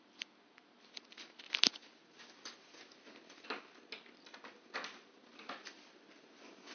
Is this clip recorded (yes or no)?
yes